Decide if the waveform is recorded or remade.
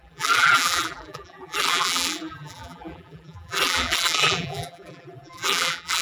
remade